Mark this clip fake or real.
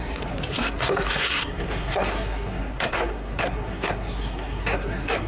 fake